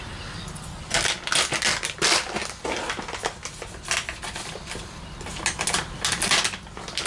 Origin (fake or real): real